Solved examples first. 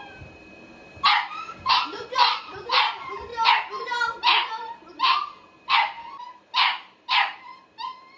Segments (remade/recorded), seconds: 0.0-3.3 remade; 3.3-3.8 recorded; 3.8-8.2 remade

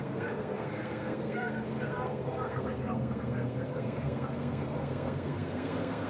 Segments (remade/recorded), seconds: 0.0-6.1 remade

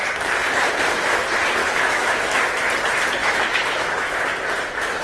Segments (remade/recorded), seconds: 0.0-1.6 recorded; 1.6-2.4 remade; 2.4-3.2 recorded; 3.2-4.2 remade; 4.2-5.0 recorded